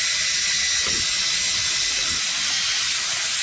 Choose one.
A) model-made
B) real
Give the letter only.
B